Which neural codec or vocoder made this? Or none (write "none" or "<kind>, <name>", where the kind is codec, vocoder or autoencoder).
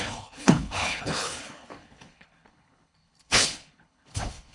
codec, HILCodec